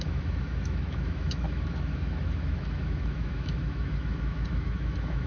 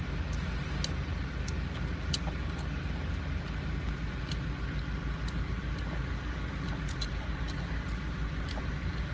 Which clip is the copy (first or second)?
first